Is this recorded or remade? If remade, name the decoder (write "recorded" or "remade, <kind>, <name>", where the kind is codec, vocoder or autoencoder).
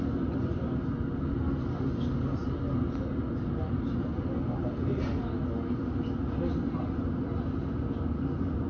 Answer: recorded